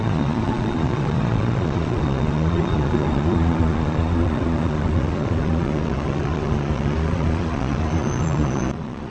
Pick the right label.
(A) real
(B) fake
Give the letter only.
B